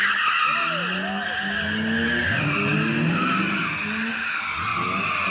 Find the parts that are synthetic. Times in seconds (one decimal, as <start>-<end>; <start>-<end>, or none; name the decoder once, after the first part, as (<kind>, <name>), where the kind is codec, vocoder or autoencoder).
none